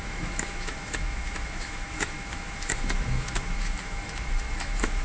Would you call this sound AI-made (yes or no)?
yes